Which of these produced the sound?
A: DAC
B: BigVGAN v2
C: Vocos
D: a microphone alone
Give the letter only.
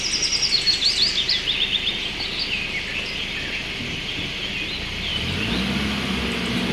D